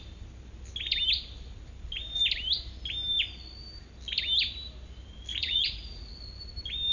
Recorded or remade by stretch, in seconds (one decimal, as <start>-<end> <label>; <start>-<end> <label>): 0.0-5.3 recorded; 5.3-6.1 remade; 6.1-6.9 recorded